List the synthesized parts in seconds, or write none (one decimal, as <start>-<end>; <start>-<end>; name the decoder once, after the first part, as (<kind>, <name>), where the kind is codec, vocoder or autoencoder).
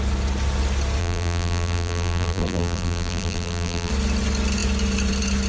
1.0-3.9 (vocoder, BigVGAN v2)